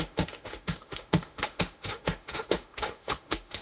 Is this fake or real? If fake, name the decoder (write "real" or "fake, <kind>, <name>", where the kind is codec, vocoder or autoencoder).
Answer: fake, autoencoder, DAC-VAE